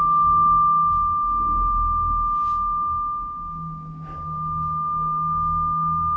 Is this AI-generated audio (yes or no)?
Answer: no